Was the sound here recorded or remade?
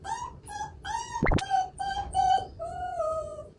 remade